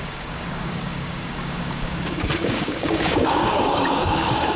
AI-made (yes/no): yes